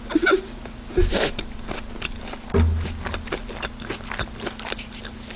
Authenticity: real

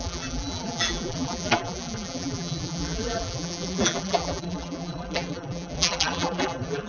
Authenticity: fake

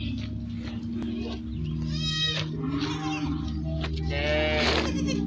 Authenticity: real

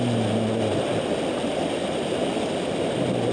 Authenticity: real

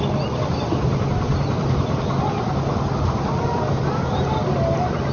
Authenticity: real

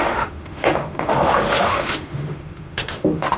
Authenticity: fake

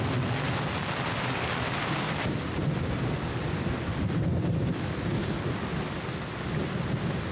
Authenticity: real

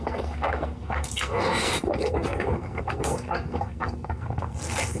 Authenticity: fake